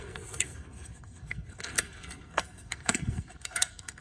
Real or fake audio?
fake